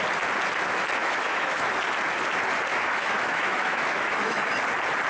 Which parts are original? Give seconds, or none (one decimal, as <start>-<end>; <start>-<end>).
0.0-1.0; 1.7-2.7; 4.5-5.1